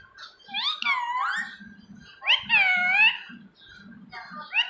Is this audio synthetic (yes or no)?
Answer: no